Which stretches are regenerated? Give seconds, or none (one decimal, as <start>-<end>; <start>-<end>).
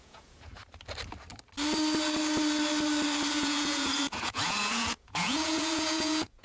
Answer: 0.0-0.6; 3.3-6.4